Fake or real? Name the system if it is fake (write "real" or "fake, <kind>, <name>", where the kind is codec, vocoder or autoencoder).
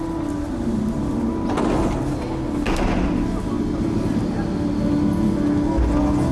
real